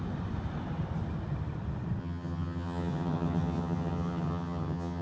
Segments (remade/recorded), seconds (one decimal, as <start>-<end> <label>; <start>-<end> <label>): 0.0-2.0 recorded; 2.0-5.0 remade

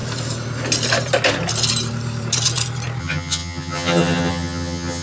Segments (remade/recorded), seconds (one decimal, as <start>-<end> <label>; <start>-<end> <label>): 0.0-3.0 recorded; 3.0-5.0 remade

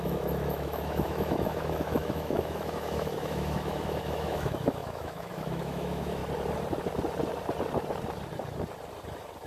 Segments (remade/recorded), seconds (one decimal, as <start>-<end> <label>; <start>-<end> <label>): 0.0-6.2 remade; 6.2-9.5 recorded

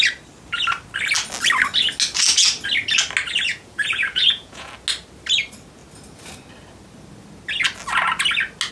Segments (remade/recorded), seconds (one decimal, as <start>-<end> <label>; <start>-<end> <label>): 0.0-3.5 recorded; 3.5-4.7 remade; 4.7-8.7 recorded